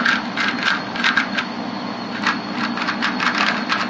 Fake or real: real